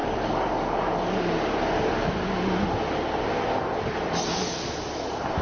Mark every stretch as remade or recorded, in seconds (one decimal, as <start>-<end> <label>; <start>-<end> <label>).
0.0-5.4 recorded